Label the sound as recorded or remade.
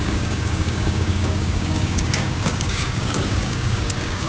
remade